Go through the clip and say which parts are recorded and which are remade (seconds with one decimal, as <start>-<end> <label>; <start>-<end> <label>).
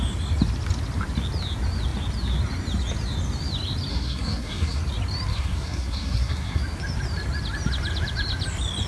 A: 0.0-3.9 recorded; 3.9-4.8 remade; 4.8-5.3 recorded; 5.3-6.6 remade; 6.6-8.9 recorded